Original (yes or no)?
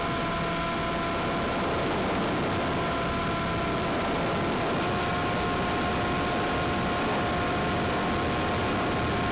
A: yes